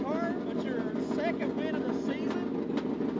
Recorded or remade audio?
recorded